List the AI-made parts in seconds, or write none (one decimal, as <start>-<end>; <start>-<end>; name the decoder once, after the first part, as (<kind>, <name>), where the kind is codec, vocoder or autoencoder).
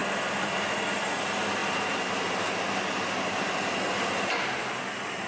none